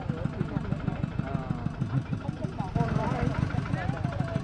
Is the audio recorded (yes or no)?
yes